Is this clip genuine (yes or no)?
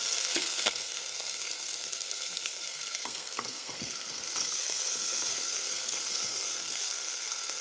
no